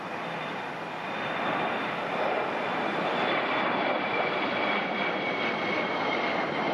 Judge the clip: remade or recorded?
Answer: remade